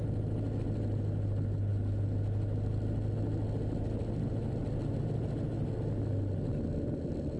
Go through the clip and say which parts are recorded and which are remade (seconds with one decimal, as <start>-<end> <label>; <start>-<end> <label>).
0.0-7.4 recorded

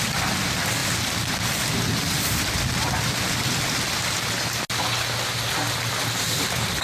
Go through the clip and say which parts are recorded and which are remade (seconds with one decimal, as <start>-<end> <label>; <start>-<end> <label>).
0.0-6.8 recorded

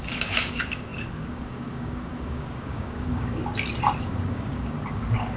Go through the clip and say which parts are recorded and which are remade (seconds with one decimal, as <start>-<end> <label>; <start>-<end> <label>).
0.0-3.4 remade; 3.4-4.0 recorded; 4.0-5.4 remade

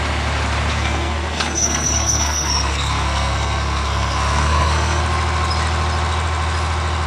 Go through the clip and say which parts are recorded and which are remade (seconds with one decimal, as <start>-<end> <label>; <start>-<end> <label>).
0.0-0.7 recorded; 0.7-5.0 remade; 5.0-7.1 recorded

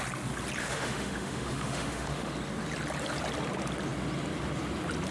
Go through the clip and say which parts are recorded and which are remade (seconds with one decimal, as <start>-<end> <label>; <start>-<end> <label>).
0.0-0.6 recorded; 0.6-2.3 remade; 2.3-5.1 recorded

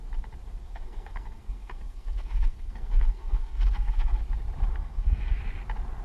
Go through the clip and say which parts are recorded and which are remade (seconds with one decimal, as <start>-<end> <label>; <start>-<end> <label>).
0.0-0.6 recorded; 0.6-4.2 remade; 4.2-4.7 recorded; 4.7-5.4 remade; 5.4-6.0 recorded